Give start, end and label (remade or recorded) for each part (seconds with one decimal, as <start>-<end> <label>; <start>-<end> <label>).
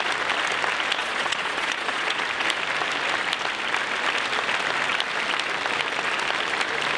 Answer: 0.0-1.0 recorded; 1.0-2.2 remade; 2.2-7.0 recorded